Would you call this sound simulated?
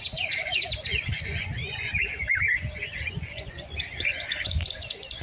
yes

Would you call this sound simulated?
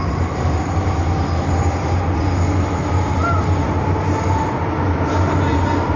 no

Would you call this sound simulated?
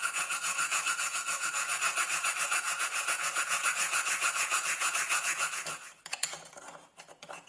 yes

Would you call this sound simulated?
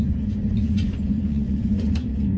yes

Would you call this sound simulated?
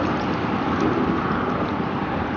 no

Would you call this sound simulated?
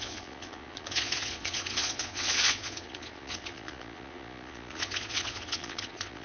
yes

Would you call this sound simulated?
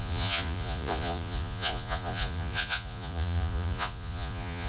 yes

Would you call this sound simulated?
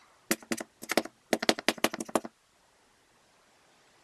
no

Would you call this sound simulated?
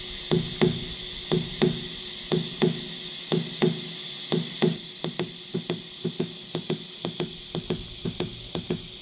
no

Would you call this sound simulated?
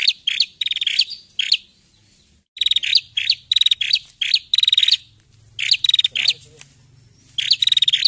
no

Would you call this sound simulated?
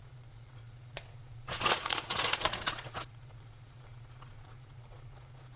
yes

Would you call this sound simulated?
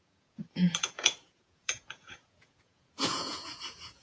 yes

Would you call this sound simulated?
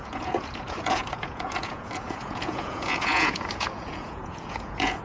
yes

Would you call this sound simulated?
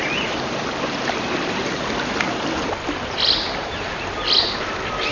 no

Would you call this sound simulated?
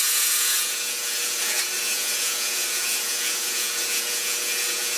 yes